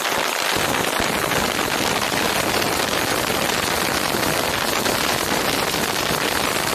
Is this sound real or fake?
real